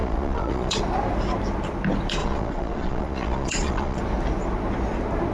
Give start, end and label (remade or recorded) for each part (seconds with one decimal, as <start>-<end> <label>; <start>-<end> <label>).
0.0-0.8 remade; 0.8-2.2 recorded; 2.2-4.0 remade; 4.0-5.3 recorded